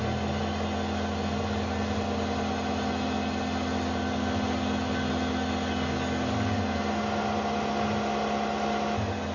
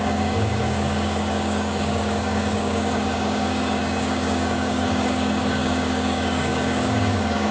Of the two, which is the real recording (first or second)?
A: first